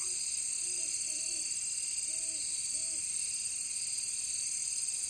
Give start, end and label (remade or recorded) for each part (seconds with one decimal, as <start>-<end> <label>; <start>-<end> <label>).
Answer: 0.0-1.2 remade; 1.2-2.4 recorded; 2.4-2.8 remade; 2.8-4.4 recorded; 4.4-5.1 remade

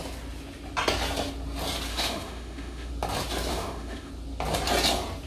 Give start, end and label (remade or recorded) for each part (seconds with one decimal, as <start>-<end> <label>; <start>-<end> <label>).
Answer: 0.0-1.9 recorded; 1.9-2.9 remade; 2.9-3.5 recorded; 3.5-4.1 remade; 4.1-5.3 recorded